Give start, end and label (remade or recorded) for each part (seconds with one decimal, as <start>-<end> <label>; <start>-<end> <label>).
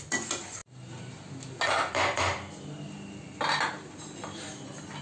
0.0-5.0 recorded